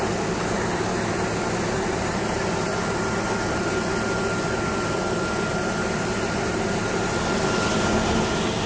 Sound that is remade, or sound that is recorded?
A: recorded